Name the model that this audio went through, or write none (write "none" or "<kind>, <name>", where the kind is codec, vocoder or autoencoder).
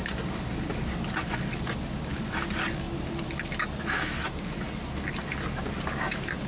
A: none